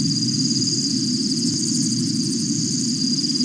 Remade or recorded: recorded